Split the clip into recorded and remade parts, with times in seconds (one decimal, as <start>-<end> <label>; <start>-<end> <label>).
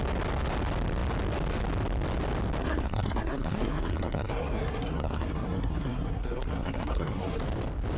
0.0-2.6 recorded; 2.6-7.4 remade; 7.4-8.0 recorded